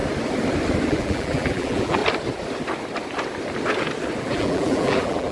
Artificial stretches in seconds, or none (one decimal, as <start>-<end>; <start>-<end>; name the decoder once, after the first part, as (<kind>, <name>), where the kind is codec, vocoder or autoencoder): 0.9-2.0 (vocoder, BigVGAN v2); 4.2-5.3